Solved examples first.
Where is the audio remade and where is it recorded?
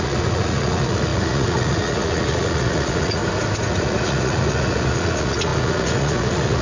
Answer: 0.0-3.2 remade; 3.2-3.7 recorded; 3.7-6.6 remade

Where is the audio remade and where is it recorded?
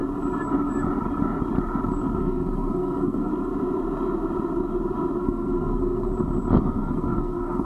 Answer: 0.0-2.2 recorded; 2.2-3.3 remade; 3.3-5.2 recorded; 5.2-6.1 remade; 6.1-6.6 recorded; 6.6-7.7 remade